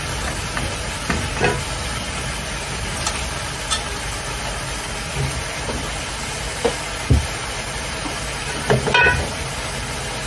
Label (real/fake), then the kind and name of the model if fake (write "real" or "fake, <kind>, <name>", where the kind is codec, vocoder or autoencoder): real